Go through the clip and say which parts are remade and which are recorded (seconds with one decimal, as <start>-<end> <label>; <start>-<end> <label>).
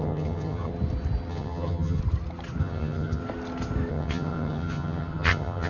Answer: 0.0-0.7 remade; 0.7-1.3 recorded; 1.3-2.0 remade; 2.0-2.6 recorded; 2.6-3.2 remade; 3.2-3.9 recorded; 3.9-5.7 remade